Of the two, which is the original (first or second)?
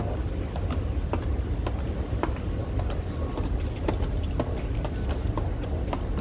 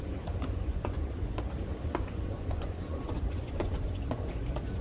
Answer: first